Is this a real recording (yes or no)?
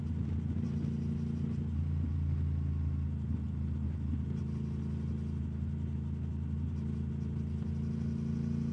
yes